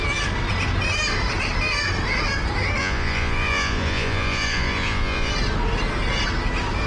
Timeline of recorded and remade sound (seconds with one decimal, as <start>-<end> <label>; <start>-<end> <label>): 0.0-2.8 recorded; 2.8-5.3 remade; 5.3-6.9 recorded